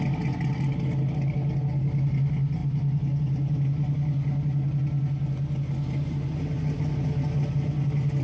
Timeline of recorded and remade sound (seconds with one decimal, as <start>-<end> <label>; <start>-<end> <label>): 0.0-8.2 recorded